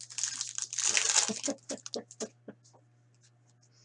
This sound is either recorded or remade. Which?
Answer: recorded